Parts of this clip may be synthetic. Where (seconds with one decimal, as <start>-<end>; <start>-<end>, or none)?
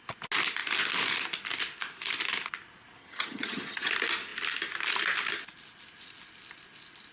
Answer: 3.0-3.9